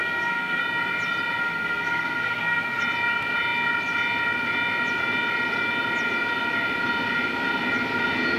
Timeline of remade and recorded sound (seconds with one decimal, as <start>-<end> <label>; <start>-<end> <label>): 0.0-0.6 remade; 0.6-1.4 recorded; 1.4-2.8 remade; 2.8-8.4 recorded